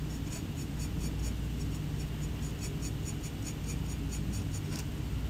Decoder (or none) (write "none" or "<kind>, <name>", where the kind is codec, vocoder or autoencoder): none